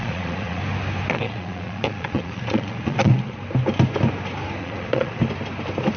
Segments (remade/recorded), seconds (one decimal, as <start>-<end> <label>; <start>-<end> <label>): 0.0-0.6 remade; 0.6-1.1 recorded; 1.1-3.4 remade; 3.4-4.6 recorded; 4.6-5.2 remade; 5.2-6.0 recorded